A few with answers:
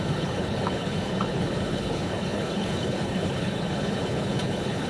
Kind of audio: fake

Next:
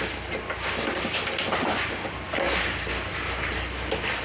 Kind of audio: real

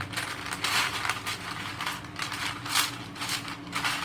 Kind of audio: real